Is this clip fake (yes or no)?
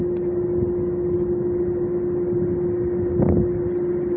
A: no